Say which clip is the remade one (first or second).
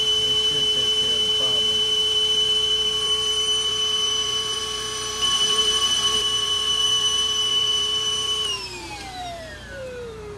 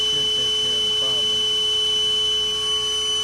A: first